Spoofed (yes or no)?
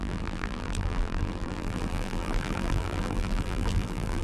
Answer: yes